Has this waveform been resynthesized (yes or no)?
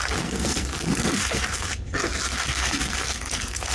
yes